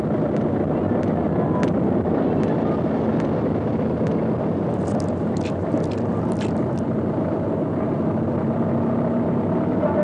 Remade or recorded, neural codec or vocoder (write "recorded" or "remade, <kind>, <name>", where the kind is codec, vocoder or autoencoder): recorded